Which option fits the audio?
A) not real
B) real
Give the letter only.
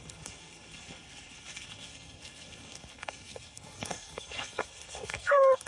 A